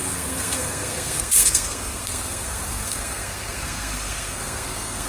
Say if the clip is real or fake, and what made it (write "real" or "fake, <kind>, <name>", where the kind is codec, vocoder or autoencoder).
fake, codec, SNAC